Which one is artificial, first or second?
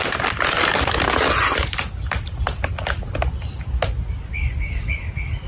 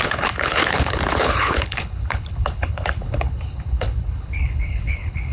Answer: second